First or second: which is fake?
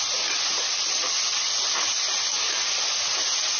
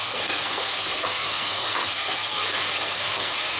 second